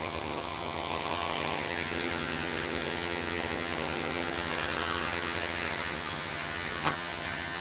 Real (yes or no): no